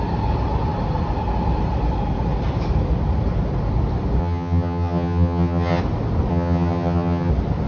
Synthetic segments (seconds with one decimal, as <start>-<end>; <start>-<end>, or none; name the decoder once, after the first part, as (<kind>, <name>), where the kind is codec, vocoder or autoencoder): 4.2-5.8 (vocoder, HiFi-GAN); 6.3-7.3